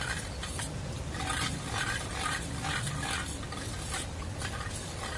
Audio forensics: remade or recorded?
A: recorded